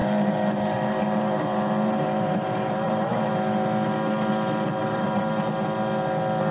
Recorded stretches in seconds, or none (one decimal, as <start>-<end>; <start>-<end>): 3.1-4.8; 5.3-6.5